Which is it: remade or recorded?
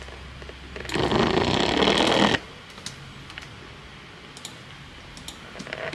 recorded